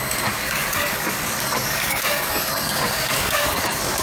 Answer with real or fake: fake